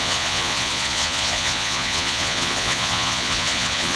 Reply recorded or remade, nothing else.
remade